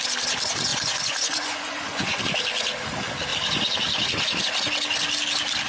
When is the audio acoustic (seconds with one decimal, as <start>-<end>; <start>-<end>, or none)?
0.0-0.7; 2.2-5.7